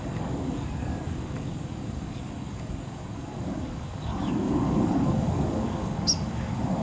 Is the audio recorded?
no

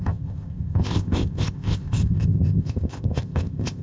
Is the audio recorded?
no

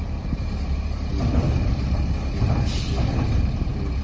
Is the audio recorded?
yes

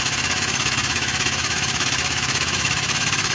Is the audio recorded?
no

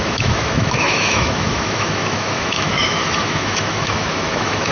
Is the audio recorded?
no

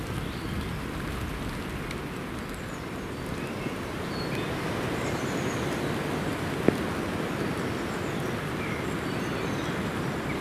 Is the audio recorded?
yes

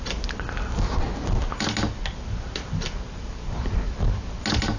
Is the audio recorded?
yes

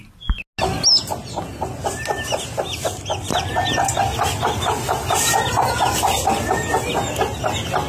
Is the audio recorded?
yes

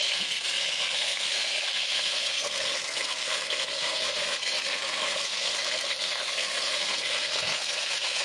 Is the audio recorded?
no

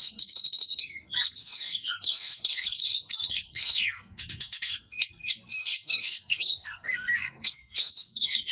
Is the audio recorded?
no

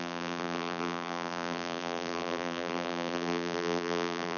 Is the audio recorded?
no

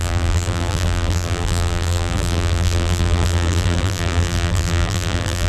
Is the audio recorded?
no